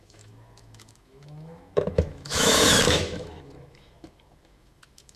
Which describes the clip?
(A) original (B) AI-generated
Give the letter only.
B